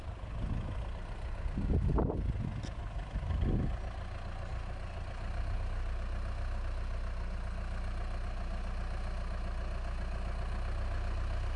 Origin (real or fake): real